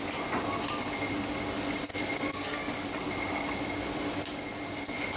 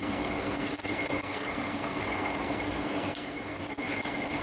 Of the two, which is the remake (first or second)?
second